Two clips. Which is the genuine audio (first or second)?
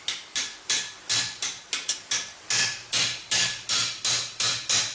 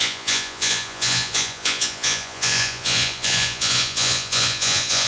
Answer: first